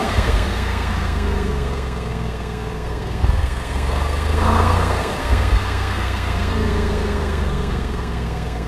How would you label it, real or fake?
fake